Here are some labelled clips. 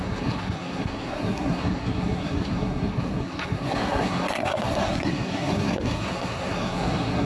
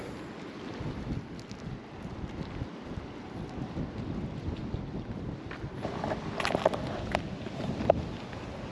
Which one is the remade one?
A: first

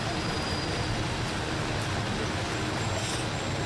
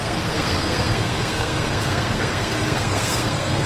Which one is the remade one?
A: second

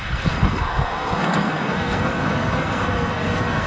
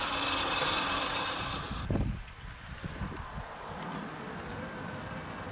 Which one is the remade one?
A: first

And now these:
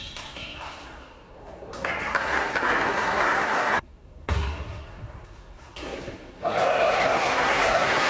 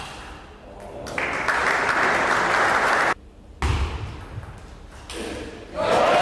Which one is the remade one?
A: first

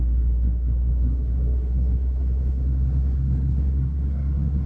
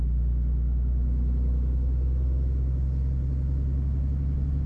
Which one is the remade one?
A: first